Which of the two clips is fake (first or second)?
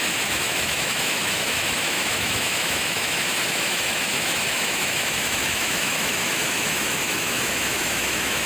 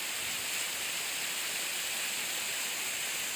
first